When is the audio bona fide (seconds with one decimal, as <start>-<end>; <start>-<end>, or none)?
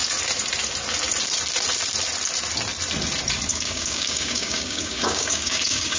0.0-3.5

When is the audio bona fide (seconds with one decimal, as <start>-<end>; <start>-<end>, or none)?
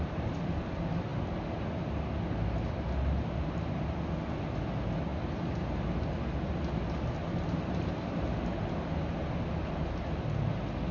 0.0-10.9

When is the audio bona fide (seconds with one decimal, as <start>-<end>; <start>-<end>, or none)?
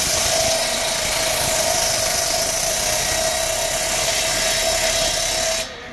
0.0-5.9